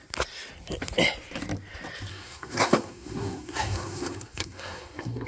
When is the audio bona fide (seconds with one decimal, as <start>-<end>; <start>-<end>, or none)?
0.0-2.1